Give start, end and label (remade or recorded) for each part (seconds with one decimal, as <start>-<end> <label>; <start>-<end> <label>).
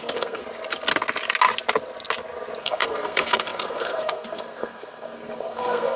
0.0-0.4 remade; 0.4-2.6 recorded; 2.6-6.0 remade